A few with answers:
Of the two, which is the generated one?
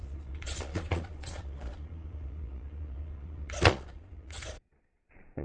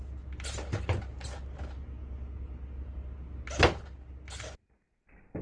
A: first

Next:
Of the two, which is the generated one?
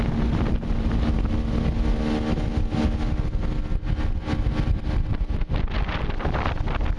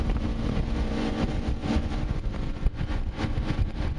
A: second